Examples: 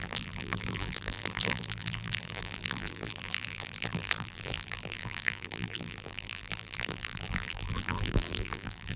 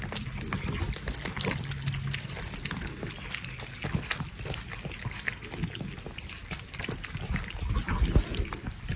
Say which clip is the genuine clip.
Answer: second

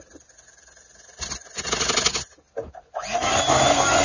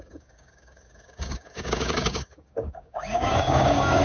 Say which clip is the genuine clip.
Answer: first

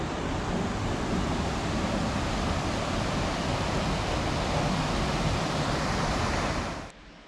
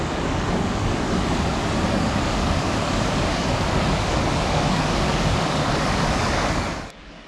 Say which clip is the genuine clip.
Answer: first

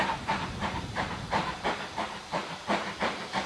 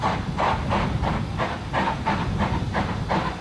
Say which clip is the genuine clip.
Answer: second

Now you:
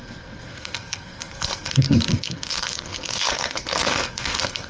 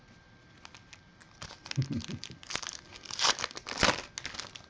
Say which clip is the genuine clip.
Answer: second